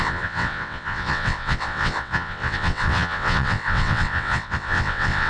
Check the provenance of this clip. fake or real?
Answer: fake